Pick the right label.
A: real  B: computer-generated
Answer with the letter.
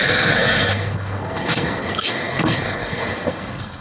B